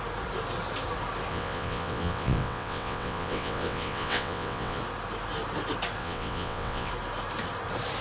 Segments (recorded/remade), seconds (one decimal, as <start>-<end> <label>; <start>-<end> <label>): 0.0-1.3 recorded; 1.3-4.8 remade; 4.8-6.0 recorded; 6.0-6.9 remade; 6.9-8.0 recorded